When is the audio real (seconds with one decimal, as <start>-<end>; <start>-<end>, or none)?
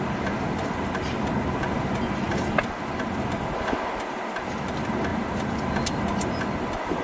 0.0-7.0